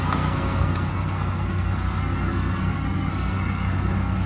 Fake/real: fake